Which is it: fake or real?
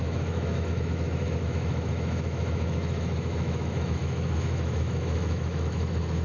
fake